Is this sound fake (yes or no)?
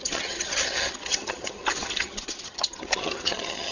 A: yes